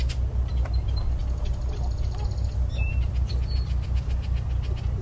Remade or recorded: recorded